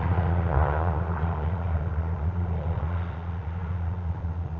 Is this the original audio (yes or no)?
no